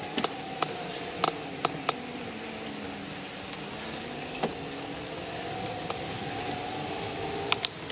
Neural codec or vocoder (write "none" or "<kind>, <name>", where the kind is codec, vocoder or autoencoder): none